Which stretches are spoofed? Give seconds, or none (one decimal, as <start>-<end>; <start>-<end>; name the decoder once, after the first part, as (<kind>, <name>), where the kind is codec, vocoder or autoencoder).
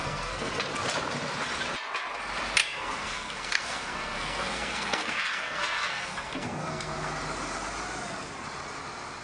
0.0-0.5 (codec, SNAC); 2.6-7.1